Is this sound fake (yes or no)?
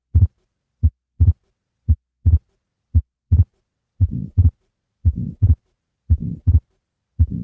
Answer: yes